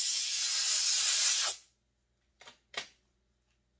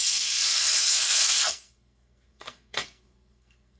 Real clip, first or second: first